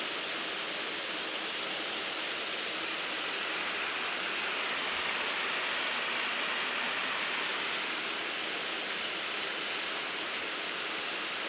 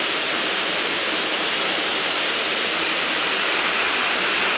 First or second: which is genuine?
first